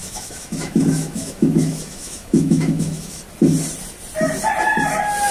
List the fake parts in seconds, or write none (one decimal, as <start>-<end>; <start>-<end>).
0.0-3.2